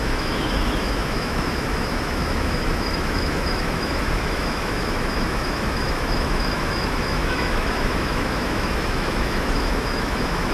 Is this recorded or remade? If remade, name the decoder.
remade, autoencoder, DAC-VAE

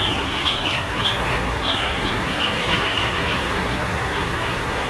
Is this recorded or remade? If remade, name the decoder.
remade, codec, SNAC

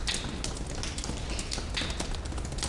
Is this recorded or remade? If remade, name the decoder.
recorded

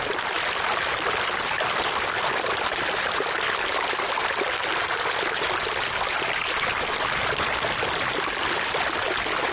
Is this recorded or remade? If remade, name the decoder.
recorded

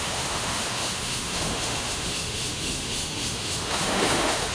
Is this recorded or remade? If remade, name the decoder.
remade, autoencoder, DAC-VAE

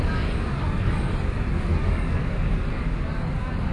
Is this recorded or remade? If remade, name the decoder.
remade, codec, DAC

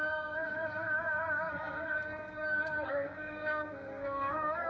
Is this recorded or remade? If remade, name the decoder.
remade, codec, SNAC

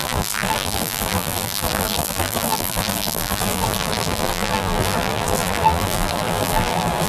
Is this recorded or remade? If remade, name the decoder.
remade, vocoder, BigVGAN v2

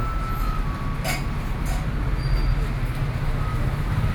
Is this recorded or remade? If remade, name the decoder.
recorded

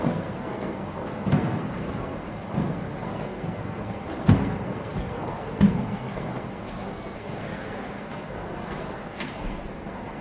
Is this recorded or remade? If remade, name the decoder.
remade, codec, SNAC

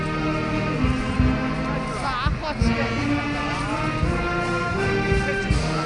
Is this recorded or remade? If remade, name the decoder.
recorded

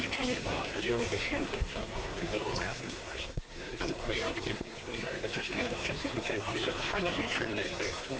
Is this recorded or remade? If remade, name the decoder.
remade, codec, SNAC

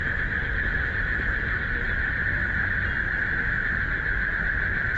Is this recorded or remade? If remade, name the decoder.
recorded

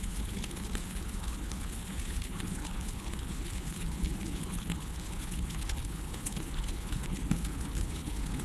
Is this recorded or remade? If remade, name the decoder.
remade, codec, HILCodec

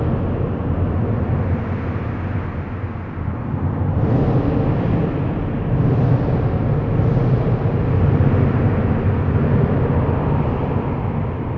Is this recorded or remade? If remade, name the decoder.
recorded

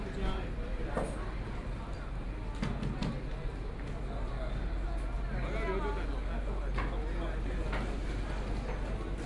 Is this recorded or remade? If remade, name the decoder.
recorded